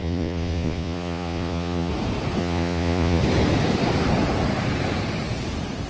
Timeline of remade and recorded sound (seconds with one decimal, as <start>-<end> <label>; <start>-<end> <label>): 0.0-1.9 remade; 1.9-2.4 recorded; 2.4-3.2 remade; 3.2-5.9 recorded